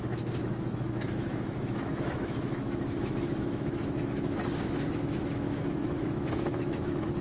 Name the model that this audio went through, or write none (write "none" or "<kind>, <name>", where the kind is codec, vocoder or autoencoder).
autoencoder, DAC-VAE